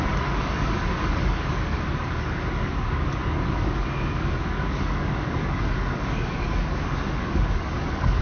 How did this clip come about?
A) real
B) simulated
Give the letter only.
B